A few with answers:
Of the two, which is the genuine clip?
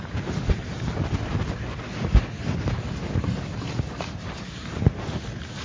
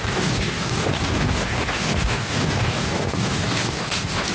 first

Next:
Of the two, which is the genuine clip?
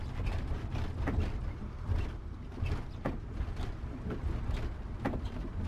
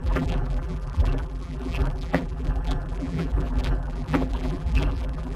first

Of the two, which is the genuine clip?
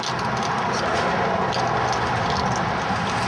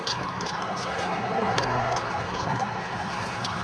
first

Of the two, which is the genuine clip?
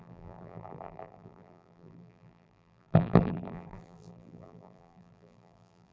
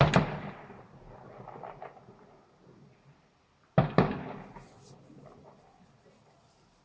second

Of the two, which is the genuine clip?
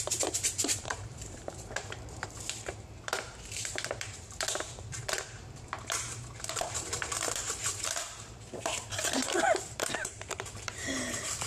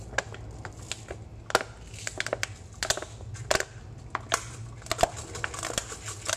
second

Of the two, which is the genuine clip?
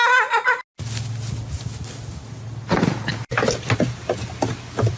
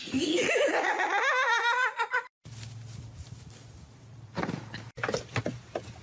first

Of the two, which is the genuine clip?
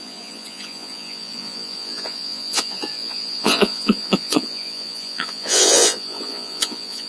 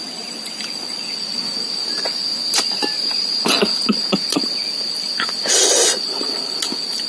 second